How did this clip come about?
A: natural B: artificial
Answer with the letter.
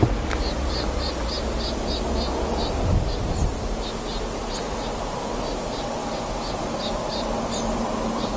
A